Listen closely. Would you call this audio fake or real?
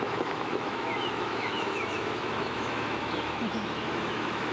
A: fake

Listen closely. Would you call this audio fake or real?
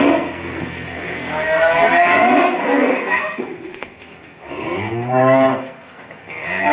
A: fake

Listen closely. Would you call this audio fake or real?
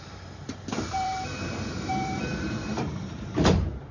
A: fake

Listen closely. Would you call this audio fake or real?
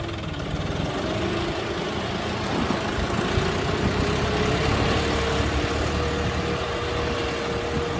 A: real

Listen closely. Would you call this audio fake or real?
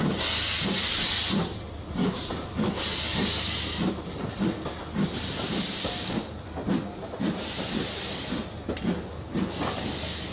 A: real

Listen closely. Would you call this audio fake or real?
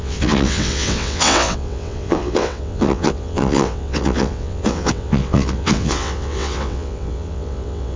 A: fake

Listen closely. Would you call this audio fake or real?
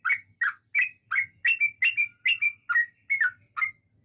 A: real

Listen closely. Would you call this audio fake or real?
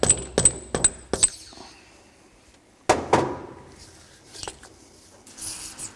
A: real